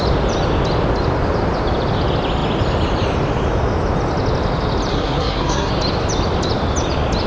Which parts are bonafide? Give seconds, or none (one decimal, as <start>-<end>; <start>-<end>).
0.0-4.9; 5.7-7.3